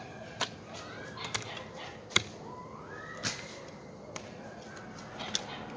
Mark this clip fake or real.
real